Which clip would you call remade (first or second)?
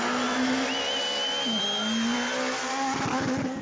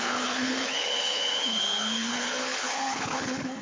second